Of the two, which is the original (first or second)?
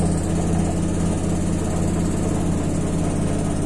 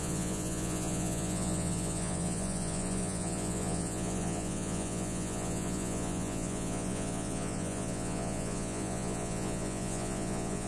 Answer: first